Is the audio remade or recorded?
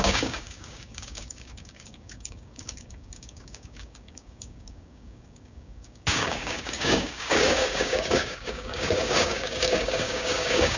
remade